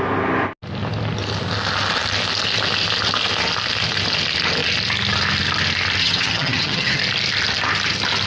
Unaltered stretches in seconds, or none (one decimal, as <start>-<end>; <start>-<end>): 0.0-6.0; 7.0-8.3